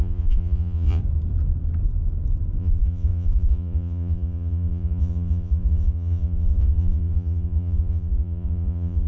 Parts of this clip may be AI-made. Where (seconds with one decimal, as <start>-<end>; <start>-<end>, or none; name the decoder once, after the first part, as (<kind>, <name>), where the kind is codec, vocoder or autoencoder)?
0.0-1.0 (vocoder, Vocos); 2.6-9.1